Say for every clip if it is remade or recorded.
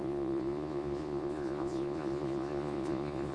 remade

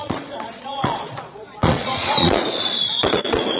remade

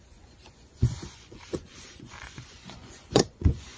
remade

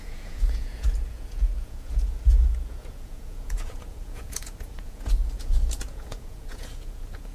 remade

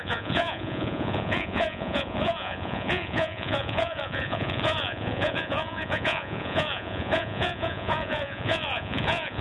remade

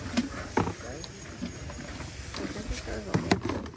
recorded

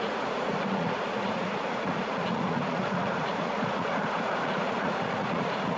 remade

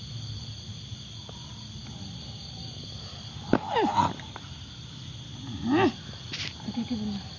recorded